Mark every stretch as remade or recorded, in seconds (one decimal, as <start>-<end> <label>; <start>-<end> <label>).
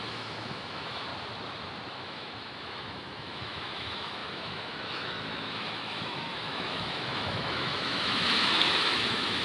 0.0-1.1 remade; 1.1-1.9 recorded; 1.9-9.4 remade